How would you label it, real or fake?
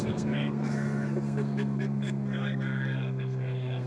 fake